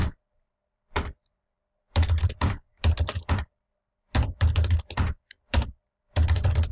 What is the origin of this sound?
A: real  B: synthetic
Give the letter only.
B